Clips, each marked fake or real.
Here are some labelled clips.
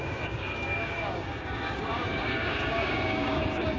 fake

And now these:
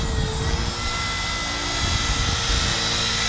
real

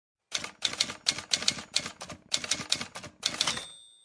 real